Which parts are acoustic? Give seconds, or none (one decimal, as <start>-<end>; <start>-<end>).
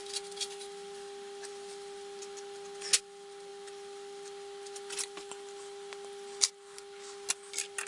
0.0-7.9